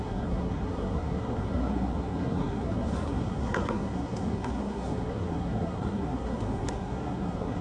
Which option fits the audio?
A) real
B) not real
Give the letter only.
B